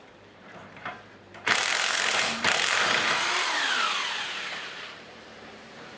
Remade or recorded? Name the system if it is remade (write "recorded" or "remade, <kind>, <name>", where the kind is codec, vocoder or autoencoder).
remade, vocoder, BigVGAN v2